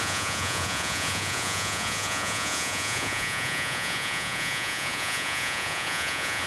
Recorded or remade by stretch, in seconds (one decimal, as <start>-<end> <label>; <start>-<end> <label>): 0.0-6.5 remade